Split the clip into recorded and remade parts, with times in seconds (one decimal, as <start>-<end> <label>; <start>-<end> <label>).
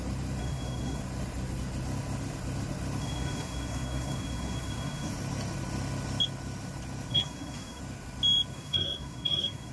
0.0-0.4 recorded; 0.4-1.0 remade; 1.0-3.0 recorded; 3.0-5.1 remade; 5.1-7.1 recorded; 7.1-7.8 remade; 7.8-8.5 recorded; 8.5-9.7 remade